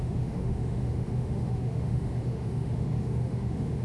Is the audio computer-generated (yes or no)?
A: yes